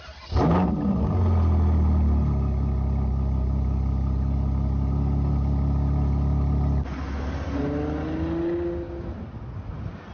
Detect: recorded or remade recorded